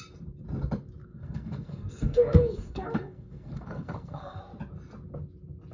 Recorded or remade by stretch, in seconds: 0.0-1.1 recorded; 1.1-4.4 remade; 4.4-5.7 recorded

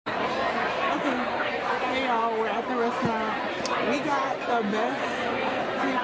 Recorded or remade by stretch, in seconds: 0.0-1.0 recorded; 1.0-1.5 remade; 1.5-5.0 recorded; 5.0-5.6 remade; 5.6-6.0 recorded

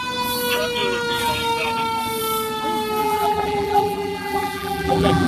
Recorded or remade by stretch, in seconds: 0.0-3.0 recorded; 3.0-5.3 remade

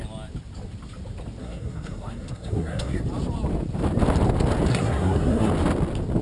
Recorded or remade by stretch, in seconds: 0.0-1.4 recorded; 1.4-3.0 remade; 3.0-4.7 recorded; 4.7-5.5 remade; 5.5-6.2 recorded

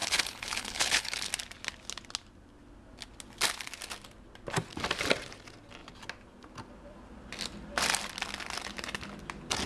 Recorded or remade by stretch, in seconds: 0.0-1.3 remade; 1.3-9.7 recorded